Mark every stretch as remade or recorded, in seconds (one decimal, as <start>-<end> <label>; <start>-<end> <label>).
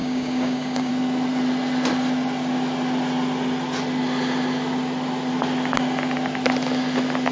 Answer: 0.0-0.9 remade; 0.9-7.3 recorded